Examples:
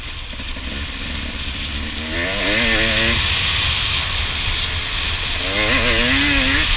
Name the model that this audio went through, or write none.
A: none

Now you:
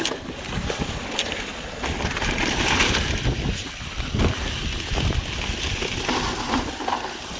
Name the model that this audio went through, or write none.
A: none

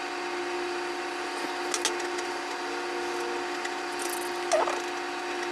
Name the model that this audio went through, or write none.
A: none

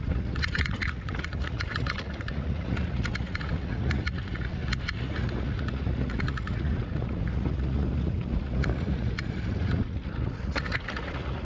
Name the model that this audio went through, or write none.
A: vocoder, Vocos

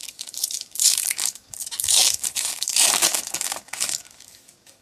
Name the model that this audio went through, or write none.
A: codec, DAC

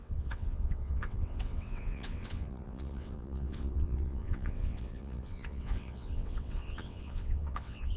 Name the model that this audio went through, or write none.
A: vocoder, WaveNeXt